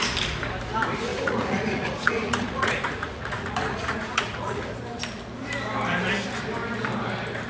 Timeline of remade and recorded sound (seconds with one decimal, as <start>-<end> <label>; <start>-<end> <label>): 0.0-1.1 recorded; 1.1-4.7 remade; 4.7-7.5 recorded